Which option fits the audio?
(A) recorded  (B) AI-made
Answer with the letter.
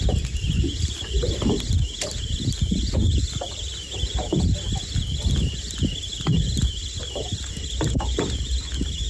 A